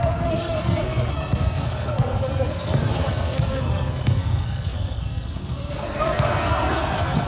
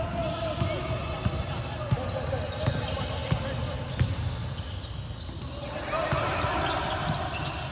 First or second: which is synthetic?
first